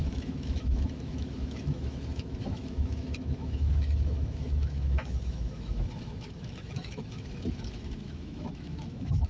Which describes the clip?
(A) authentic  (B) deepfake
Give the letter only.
B